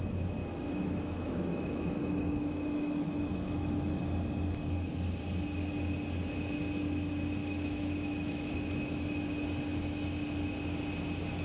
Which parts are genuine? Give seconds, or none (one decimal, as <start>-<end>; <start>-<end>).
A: 0.0-0.4; 3.9-7.4; 8.5-11.4